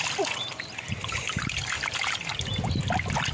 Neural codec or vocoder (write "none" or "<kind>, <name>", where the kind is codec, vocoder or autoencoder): none